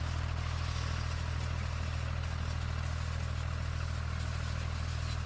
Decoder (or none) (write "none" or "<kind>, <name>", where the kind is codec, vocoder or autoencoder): none